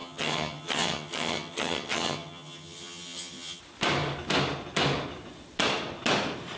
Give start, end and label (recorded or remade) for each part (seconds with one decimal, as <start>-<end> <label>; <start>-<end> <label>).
0.0-3.6 remade; 3.6-6.6 recorded